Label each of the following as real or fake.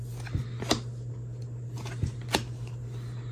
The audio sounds real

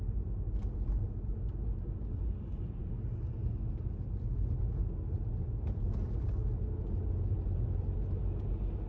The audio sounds real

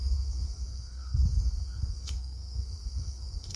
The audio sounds fake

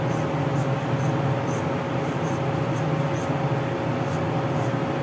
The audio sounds real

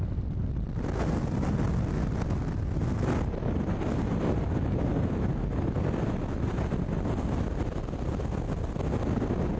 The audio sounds real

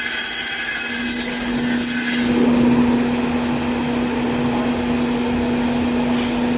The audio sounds real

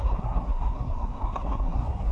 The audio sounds fake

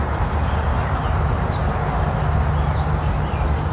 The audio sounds real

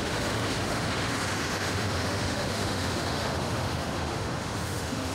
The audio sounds fake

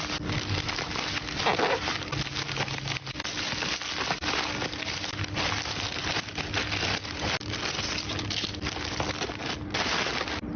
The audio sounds real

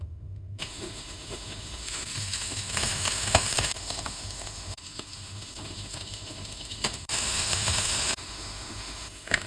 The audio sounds fake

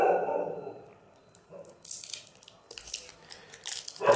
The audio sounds real